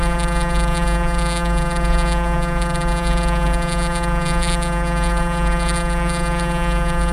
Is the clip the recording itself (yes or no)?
no